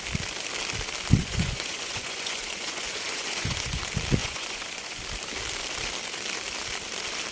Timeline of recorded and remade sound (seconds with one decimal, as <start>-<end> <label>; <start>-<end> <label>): 0.0-1.2 recorded; 1.2-3.8 remade; 3.8-4.2 recorded; 4.2-5.0 remade; 5.0-7.3 recorded

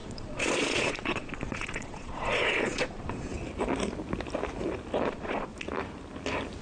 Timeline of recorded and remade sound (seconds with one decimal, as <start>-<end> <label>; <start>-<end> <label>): 0.0-3.3 remade; 3.3-5.1 recorded; 5.1-5.5 remade; 5.5-6.6 recorded

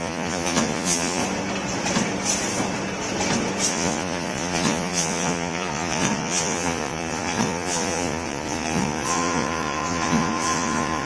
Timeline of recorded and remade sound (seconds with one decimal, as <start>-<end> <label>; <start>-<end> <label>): 0.0-1.2 remade; 1.2-3.7 recorded; 3.7-11.1 remade

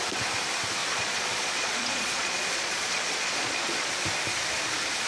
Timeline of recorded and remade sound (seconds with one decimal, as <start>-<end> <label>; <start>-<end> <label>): 0.0-0.8 recorded; 0.8-3.9 remade; 3.9-5.1 recorded

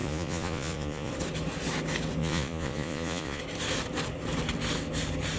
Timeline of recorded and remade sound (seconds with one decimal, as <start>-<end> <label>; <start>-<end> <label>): 0.0-1.1 remade; 1.1-2.2 recorded; 2.2-3.4 remade; 3.4-5.4 recorded

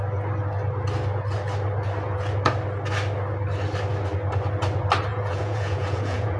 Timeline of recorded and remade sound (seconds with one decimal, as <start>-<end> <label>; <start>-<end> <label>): 0.0-5.1 recorded; 5.1-6.4 remade

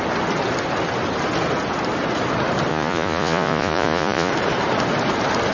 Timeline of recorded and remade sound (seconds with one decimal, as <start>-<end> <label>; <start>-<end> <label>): 0.0-2.7 recorded; 2.7-4.3 remade; 4.3-5.5 recorded

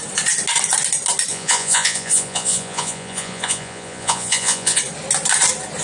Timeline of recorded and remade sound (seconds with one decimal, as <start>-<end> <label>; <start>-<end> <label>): 0.0-1.3 recorded; 1.3-4.8 remade; 4.8-5.8 recorded